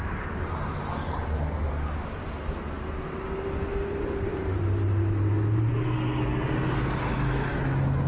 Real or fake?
real